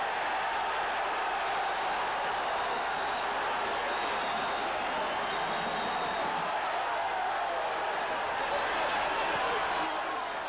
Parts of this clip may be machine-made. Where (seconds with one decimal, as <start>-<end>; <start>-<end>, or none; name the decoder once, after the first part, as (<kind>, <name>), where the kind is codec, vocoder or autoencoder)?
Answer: none